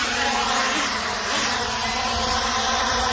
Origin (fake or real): fake